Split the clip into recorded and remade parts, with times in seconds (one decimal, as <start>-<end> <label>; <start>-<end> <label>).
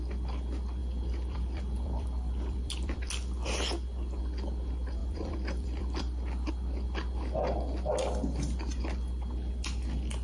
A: 0.0-0.8 recorded; 0.8-3.1 remade; 3.1-5.0 recorded; 5.0-6.5 remade; 6.5-10.2 recorded